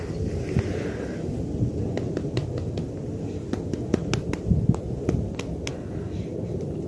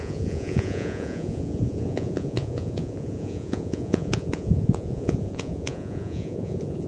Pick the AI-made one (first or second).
second